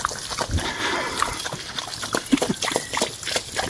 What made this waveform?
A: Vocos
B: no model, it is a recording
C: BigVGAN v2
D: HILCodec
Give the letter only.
B